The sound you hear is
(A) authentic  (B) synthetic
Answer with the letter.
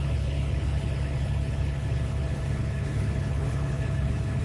B